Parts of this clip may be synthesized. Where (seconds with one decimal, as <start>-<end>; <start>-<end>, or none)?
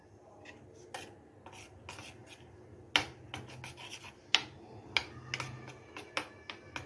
none